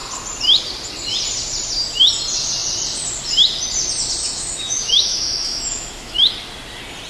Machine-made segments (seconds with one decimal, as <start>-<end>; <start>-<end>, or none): 4.2-6.3